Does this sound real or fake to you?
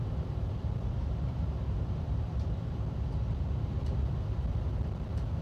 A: fake